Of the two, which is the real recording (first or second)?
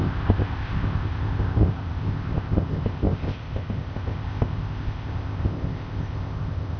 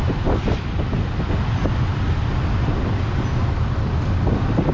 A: second